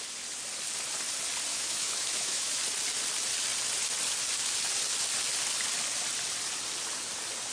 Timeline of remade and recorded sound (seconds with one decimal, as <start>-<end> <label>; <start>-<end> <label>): 0.0-1.5 recorded; 1.5-2.6 remade; 2.6-7.5 recorded